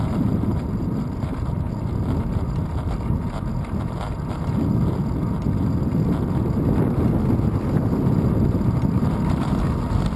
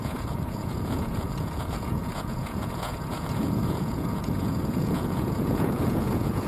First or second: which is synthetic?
second